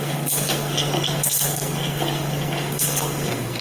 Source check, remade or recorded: remade